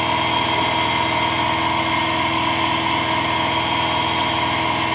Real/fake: real